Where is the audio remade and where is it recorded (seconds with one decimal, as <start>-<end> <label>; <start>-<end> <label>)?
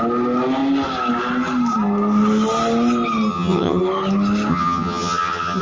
0.0-3.3 recorded; 3.3-3.8 remade; 3.8-4.5 recorded; 4.5-5.6 remade